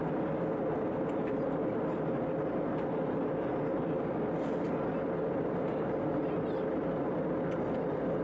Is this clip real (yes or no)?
yes